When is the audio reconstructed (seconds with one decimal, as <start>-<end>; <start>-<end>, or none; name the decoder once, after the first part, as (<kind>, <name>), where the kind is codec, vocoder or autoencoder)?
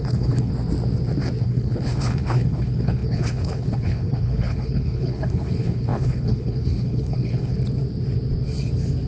0.0-0.5 (codec, HILCodec); 1.4-7.5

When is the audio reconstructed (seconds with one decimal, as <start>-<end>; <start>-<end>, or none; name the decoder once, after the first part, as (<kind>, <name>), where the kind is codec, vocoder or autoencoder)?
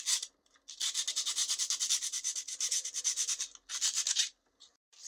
none